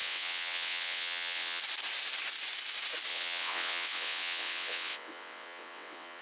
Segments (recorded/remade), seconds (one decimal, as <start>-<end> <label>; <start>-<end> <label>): 0.0-1.6 remade; 1.6-3.1 recorded; 3.1-6.2 remade